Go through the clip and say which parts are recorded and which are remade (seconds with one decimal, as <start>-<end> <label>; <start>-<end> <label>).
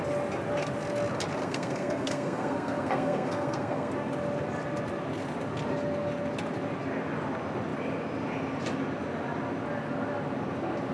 0.0-1.4 recorded; 1.4-3.9 remade; 3.9-10.9 recorded